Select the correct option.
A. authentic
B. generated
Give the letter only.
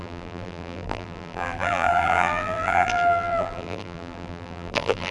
B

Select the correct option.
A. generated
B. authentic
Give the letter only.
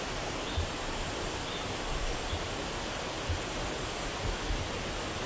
B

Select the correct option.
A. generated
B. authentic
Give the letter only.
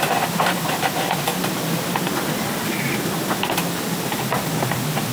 B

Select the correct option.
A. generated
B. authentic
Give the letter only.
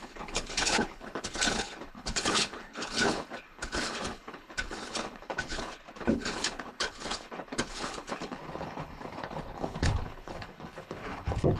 A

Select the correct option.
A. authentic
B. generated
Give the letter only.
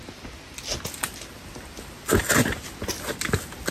A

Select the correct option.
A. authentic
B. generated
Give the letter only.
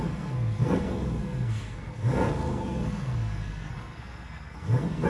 B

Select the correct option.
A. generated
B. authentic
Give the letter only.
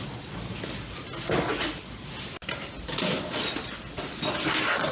B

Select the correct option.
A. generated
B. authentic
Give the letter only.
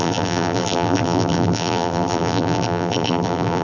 A